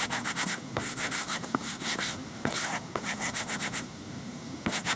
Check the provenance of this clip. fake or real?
fake